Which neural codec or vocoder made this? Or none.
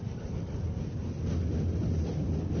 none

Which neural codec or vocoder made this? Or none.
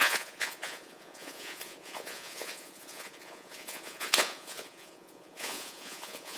vocoder, Vocos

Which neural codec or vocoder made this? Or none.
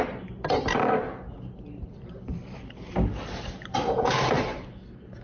none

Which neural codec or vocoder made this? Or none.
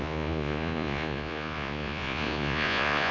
vocoder, Vocos